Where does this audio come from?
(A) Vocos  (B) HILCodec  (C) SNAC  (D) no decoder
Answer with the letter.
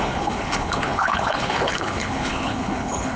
B